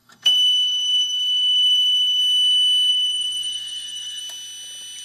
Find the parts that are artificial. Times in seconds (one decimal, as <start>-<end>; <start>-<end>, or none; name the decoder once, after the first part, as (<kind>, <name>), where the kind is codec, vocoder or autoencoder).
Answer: 0.0-2.2 (codec, SNAC); 2.9-4.2